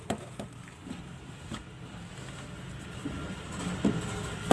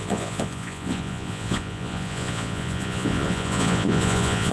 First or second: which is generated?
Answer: second